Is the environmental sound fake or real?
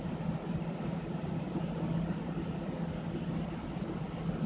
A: real